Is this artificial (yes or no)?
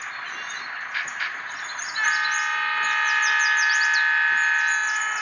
no